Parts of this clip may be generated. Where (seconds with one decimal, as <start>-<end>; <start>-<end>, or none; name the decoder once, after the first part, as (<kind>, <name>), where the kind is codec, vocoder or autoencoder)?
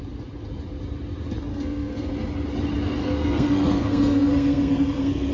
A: 1.5-2.1 (codec, SNAC); 3.0-5.3